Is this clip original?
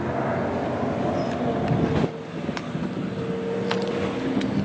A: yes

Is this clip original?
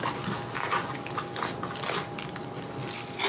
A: yes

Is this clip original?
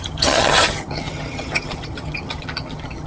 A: no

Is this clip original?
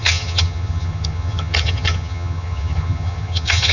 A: no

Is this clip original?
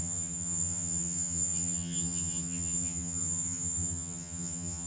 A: no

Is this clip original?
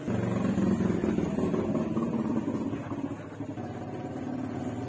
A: yes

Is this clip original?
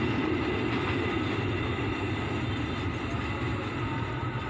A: yes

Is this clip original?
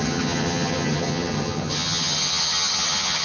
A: no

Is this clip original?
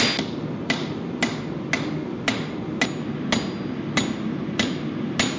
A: yes